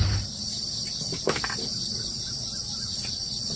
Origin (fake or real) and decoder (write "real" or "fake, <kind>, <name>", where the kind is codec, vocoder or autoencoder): real